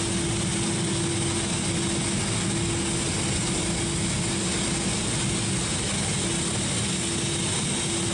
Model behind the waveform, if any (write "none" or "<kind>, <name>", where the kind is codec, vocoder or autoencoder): none